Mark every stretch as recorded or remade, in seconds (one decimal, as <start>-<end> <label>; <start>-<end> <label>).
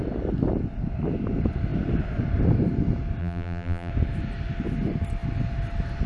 0.0-3.2 recorded; 3.2-3.9 remade; 3.9-6.1 recorded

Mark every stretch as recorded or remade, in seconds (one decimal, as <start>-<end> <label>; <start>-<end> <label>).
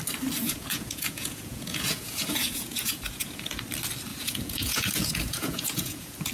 0.0-0.4 recorded; 0.4-3.6 remade; 3.6-4.1 recorded; 4.1-6.3 remade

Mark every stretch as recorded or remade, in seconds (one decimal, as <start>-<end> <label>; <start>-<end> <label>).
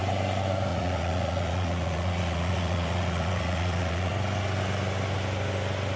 0.0-0.7 recorded; 0.7-4.1 remade; 4.1-6.0 recorded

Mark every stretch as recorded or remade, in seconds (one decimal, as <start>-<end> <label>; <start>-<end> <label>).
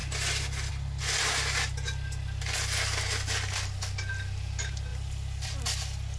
0.0-4.9 recorded; 4.9-5.6 remade; 5.6-6.2 recorded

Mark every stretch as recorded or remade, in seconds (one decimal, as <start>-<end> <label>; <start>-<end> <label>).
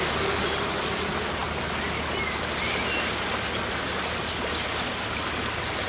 0.0-5.9 recorded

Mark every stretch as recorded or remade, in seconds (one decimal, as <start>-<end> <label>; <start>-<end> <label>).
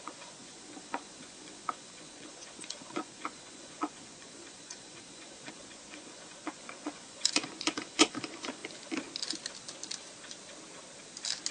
0.0-8.6 remade; 8.6-11.5 recorded